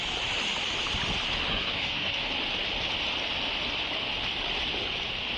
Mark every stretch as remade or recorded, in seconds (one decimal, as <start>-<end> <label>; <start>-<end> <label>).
0.0-1.5 recorded; 1.5-2.3 remade; 2.3-5.4 recorded